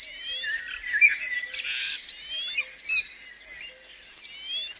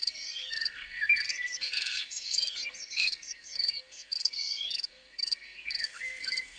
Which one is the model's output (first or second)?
second